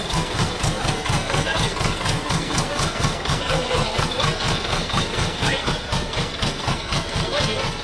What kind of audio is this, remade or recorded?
remade